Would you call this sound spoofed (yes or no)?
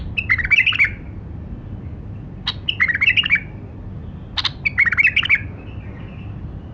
no